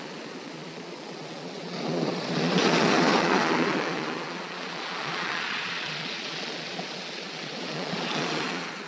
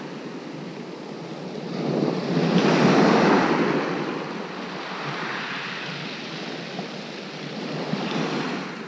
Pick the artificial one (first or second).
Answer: first